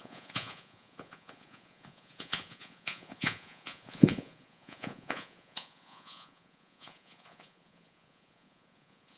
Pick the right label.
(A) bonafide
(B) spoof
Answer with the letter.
B